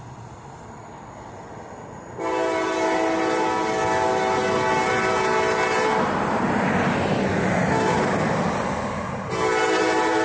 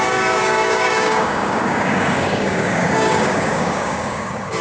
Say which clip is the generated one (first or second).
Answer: second